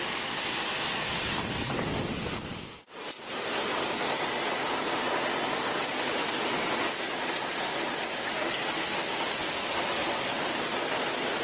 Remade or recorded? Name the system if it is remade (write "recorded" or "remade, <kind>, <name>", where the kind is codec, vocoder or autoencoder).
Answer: recorded